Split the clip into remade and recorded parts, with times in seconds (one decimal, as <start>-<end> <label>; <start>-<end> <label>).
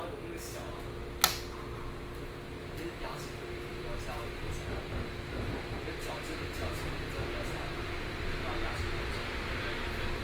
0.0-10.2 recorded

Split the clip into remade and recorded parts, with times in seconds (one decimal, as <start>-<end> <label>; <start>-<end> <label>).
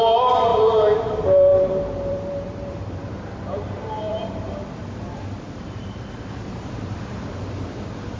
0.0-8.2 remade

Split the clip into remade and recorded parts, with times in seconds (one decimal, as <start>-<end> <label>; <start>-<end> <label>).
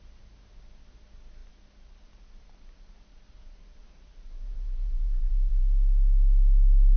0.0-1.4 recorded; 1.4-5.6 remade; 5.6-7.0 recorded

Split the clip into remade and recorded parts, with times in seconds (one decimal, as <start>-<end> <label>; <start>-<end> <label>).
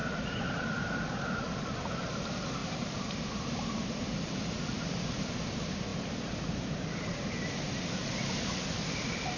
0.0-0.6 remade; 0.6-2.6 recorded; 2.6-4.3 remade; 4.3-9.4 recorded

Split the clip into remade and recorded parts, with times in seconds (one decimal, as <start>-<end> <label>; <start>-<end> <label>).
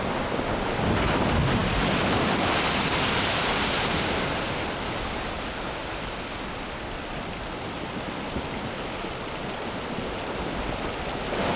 0.0-11.6 recorded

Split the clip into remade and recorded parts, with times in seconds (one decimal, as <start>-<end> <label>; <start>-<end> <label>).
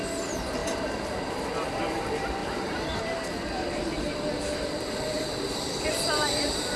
0.0-2.4 recorded; 2.4-6.8 remade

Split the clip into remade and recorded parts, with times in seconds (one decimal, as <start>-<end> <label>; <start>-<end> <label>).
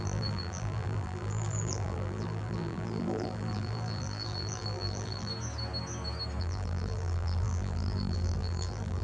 0.0-5.3 remade; 5.3-6.4 recorded; 6.4-9.0 remade